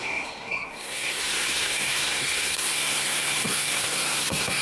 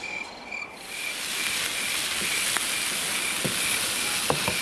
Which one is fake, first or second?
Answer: first